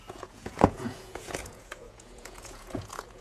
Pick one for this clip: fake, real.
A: fake